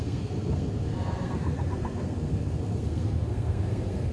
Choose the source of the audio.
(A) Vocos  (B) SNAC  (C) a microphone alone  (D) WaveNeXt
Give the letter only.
B